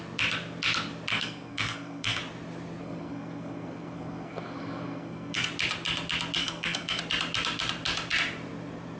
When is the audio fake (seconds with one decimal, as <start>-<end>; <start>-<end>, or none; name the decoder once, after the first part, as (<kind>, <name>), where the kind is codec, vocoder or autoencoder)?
1.1-2.2 (codec, SNAC); 2.8-5.5; 6.4-7.0